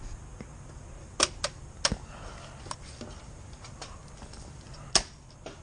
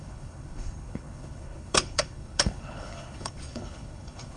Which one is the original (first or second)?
first